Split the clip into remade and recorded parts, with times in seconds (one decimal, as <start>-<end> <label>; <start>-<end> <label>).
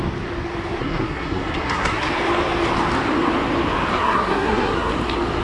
0.0-0.8 recorded; 0.8-2.1 remade; 2.1-3.9 recorded; 3.9-4.9 remade; 4.9-5.4 recorded